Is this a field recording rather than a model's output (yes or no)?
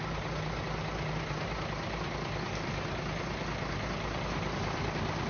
yes